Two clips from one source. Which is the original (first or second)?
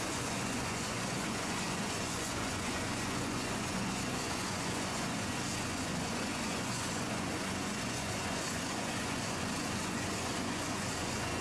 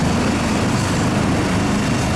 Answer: second